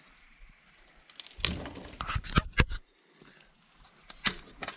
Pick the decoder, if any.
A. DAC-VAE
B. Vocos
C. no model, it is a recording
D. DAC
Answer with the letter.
C